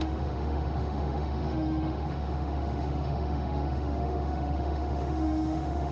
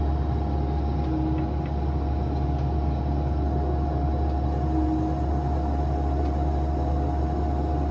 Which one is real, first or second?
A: second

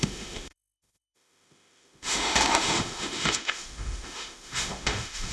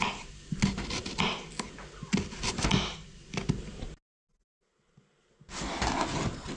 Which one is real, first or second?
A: second